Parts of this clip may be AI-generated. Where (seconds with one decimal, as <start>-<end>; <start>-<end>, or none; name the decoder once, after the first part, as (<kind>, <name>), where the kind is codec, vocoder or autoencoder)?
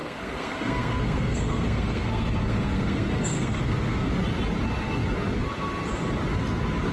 0.0-4.1 (codec, SNAC)